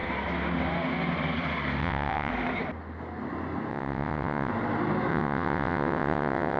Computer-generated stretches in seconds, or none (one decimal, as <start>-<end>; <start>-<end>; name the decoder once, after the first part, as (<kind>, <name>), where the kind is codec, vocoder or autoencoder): 1.8-2.3 (vocoder, WaveNeXt); 3.7-4.5; 5.1-6.6